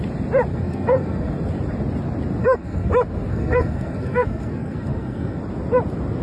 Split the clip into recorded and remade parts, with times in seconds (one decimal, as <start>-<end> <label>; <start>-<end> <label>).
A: 0.0-0.5 recorded; 0.5-1.3 remade; 1.3-2.4 recorded; 2.4-2.9 remade; 2.9-3.3 recorded; 3.3-5.4 remade; 5.4-6.2 recorded